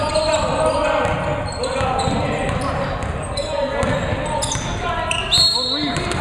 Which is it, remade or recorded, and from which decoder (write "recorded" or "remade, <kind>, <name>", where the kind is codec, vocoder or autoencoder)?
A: recorded